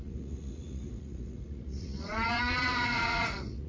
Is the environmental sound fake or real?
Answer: fake